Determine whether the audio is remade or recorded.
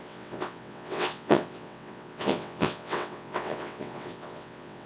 remade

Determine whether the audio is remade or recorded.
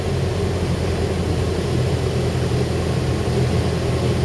recorded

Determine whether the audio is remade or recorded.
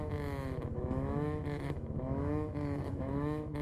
remade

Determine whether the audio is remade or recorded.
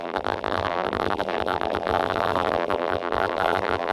remade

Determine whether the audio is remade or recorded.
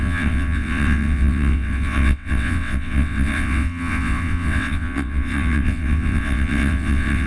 remade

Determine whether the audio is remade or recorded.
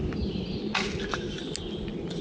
recorded